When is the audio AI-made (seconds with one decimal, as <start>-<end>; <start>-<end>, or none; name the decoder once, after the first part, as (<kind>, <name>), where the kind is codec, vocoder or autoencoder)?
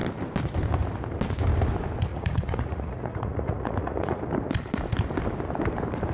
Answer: 2.1-4.2 (vocoder, Vocos)